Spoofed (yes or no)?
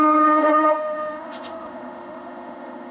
yes